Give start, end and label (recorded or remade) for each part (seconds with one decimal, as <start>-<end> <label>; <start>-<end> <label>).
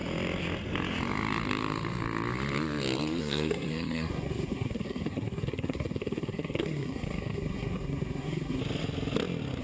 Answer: 0.0-3.2 recorded; 3.2-8.6 remade; 8.6-9.6 recorded